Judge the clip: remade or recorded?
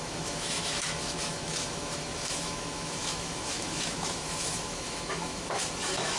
remade